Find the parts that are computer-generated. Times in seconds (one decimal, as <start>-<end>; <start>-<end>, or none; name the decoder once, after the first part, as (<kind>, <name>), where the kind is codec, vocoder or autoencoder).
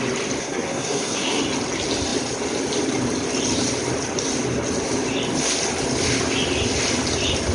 0.4-1.4 (codec, SNAC)